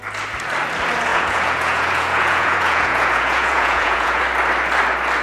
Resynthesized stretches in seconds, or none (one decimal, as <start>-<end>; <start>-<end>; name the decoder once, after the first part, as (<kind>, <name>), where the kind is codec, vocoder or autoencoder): 1.1-4.2 (vocoder, Vocos)